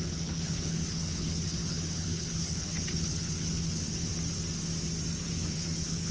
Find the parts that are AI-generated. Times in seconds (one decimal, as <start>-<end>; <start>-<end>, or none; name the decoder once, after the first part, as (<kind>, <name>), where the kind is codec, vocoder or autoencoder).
0.0-4.1 (codec, HILCodec); 5.2-6.1